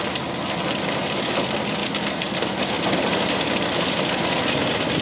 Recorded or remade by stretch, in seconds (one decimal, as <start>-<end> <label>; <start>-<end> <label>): 0.0-5.0 recorded